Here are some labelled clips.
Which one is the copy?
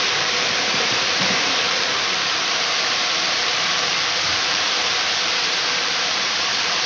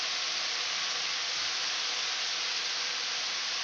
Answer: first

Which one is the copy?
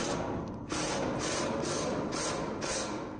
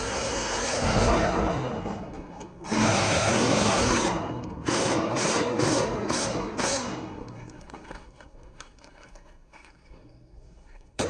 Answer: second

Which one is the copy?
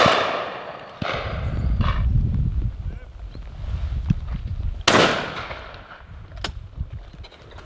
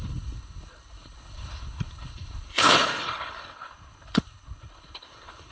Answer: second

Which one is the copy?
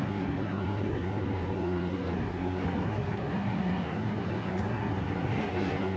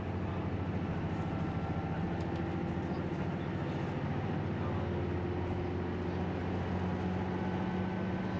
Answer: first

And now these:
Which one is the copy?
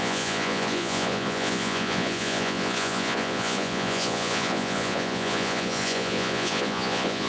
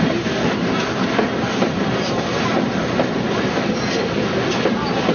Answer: first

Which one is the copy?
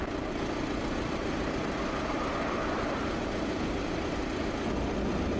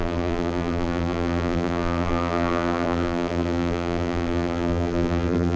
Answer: second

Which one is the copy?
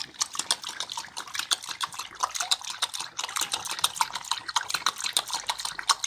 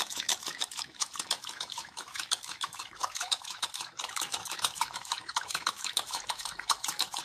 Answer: second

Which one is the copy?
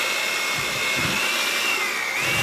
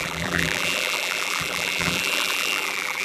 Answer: second